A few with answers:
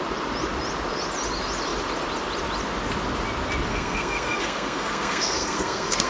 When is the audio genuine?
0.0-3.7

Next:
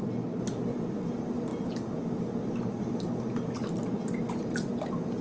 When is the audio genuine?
0.0-5.2

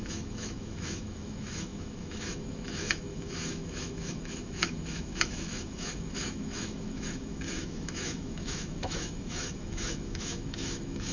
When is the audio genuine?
none

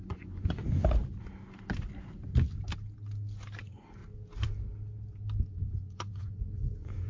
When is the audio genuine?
0.6-3.6; 4.0-5.4

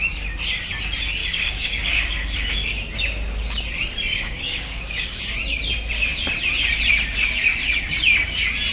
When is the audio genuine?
0.0-1.2; 2.5-4.1; 5.2-8.7

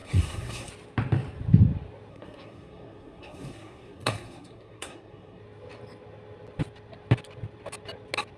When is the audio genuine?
0.7-2.1; 5.4-8.4

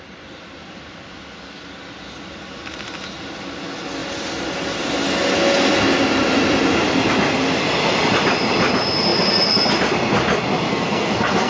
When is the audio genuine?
0.0-10.7